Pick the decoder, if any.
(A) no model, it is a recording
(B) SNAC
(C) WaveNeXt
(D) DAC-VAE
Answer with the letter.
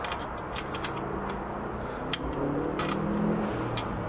A